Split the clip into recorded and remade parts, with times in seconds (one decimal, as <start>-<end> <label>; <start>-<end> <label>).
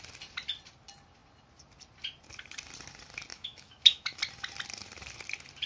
0.0-3.3 recorded; 3.3-4.2 remade; 4.2-5.7 recorded